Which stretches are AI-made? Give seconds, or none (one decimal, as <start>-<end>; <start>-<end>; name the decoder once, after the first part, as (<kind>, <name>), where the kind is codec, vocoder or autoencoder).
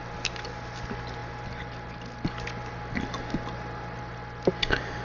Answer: none